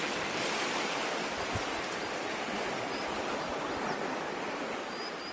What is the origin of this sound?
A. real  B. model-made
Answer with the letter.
A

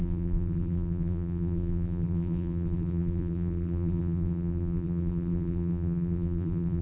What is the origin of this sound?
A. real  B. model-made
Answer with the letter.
B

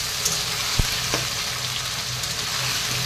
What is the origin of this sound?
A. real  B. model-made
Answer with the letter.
A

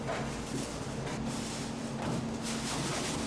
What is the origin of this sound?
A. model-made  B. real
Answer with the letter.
B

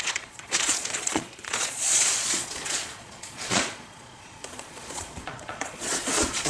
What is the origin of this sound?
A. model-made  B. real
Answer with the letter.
A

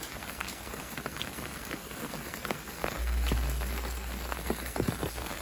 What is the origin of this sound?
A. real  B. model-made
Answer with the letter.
B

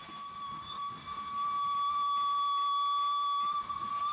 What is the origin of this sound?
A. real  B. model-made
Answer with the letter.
A